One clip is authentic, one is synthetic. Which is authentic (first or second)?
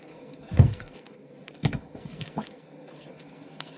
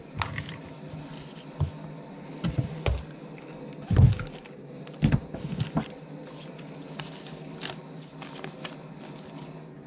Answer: second